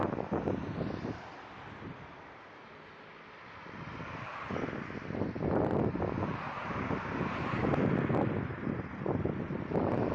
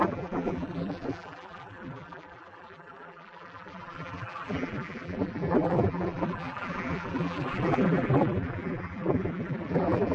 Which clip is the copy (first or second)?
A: second